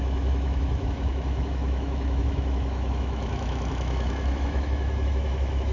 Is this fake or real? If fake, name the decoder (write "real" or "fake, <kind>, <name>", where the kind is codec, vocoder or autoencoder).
fake, autoencoder, DAC-VAE